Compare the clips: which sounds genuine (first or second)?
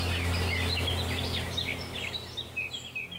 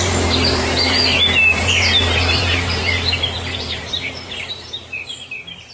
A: first